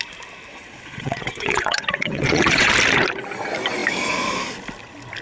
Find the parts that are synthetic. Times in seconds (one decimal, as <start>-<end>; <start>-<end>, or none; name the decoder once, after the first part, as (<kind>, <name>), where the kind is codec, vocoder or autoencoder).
0.5-2.7 (vocoder, WaveNeXt)